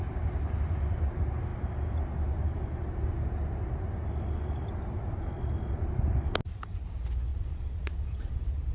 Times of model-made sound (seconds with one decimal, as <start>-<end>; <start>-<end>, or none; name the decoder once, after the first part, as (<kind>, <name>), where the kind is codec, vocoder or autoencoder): 7.3-8.7 (vocoder, Vocos)